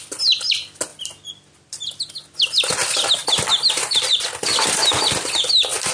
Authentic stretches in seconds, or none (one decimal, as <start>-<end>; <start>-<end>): 0.0-5.9